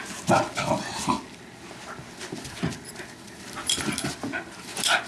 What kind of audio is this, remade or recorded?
recorded